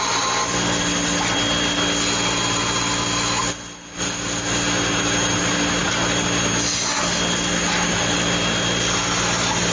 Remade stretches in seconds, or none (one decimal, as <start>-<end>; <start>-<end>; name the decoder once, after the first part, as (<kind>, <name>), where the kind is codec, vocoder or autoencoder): none